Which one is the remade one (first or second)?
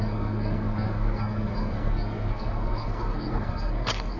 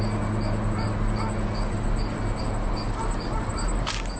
first